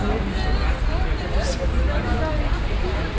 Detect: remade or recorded recorded